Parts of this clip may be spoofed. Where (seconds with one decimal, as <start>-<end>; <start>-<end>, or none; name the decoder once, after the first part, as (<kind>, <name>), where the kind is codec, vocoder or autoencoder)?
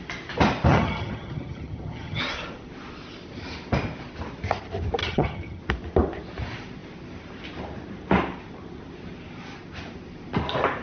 0.7-2.2 (vocoder, HiFi-GAN); 5.0-5.6